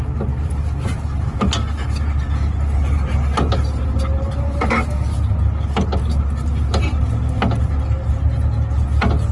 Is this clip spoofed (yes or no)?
no